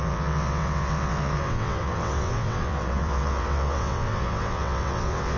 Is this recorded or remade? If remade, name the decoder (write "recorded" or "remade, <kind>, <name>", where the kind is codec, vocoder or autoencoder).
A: remade, vocoder, WaveNeXt